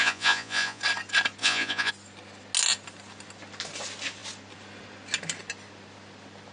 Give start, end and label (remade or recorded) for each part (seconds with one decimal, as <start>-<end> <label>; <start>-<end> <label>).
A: 0.0-0.8 remade; 0.8-1.4 recorded; 1.4-1.9 remade; 1.9-6.5 recorded

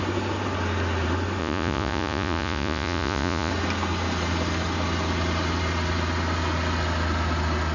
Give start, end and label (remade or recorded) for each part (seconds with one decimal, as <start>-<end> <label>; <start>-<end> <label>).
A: 0.0-1.4 recorded; 1.4-3.5 remade; 3.5-7.7 recorded

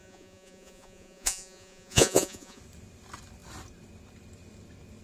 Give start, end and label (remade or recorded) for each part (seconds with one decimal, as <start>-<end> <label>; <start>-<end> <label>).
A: 0.0-2.6 remade; 2.6-5.0 recorded